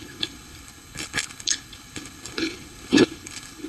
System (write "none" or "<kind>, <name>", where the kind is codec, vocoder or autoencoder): codec, HILCodec